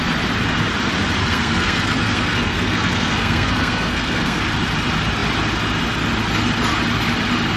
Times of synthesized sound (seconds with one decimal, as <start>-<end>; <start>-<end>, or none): 1.2-4.4